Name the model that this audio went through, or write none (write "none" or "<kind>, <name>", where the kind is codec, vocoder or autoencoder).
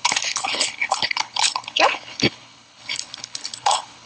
codec, HILCodec